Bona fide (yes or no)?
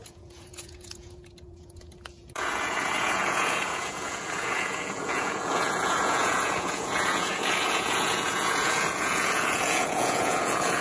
no